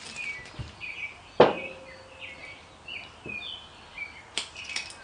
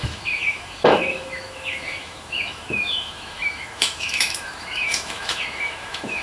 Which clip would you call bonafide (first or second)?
first